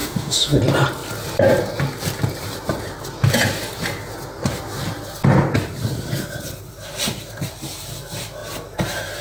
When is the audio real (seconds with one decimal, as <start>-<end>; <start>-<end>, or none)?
0.6-9.2